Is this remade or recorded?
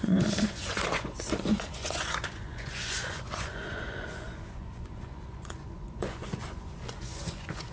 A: remade